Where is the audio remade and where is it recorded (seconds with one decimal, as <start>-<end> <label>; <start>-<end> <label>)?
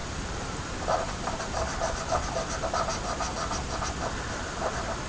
0.0-2.7 remade; 2.7-5.1 recorded